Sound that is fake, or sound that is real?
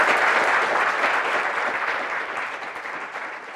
real